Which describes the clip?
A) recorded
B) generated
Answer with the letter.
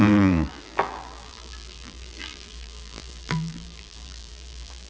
B